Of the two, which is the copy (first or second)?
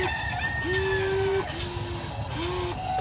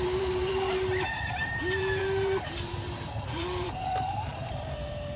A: second